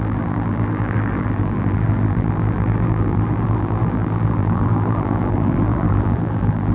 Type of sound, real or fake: fake